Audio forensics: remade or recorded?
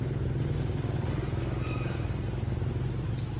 recorded